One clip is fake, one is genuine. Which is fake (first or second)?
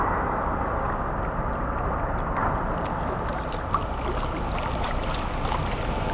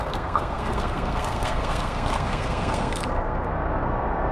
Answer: second